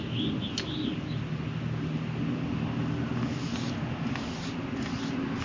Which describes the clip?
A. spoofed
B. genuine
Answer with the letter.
B